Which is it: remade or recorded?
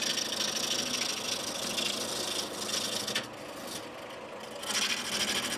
recorded